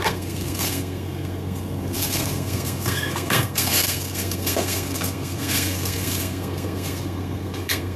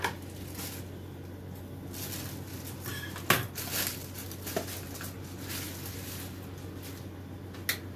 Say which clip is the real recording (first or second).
second